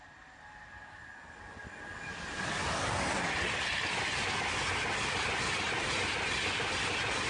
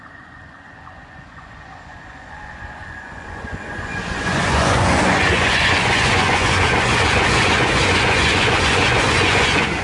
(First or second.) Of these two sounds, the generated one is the second